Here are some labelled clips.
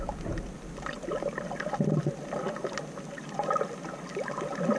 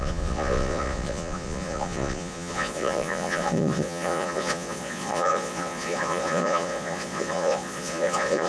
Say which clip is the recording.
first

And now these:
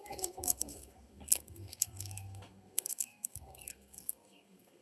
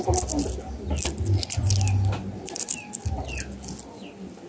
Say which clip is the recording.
second